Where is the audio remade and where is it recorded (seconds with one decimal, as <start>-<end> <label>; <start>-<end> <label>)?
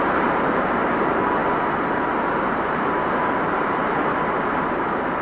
0.0-1.4 remade; 1.4-2.0 recorded; 2.0-3.8 remade; 3.8-5.2 recorded